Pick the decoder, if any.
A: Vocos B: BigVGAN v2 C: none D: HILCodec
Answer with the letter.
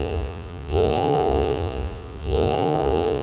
A